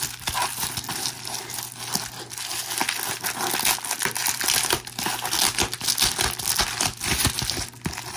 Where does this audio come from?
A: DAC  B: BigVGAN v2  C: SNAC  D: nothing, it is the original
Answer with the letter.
D